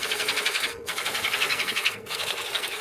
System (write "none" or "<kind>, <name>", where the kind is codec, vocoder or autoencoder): codec, SNAC